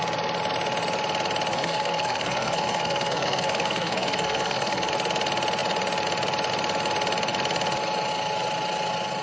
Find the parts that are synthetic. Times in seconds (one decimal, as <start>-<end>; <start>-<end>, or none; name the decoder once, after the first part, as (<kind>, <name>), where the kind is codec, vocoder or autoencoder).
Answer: 1.5-4.9 (codec, SNAC)